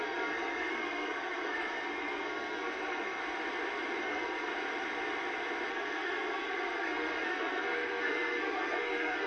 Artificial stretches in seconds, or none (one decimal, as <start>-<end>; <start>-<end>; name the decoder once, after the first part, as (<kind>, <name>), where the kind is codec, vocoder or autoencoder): 0.0-3.2 (codec, SNAC); 4.0-4.5; 5.7-9.3